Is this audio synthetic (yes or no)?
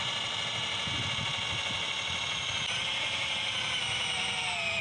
no